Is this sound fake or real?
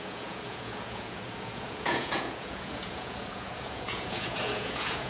fake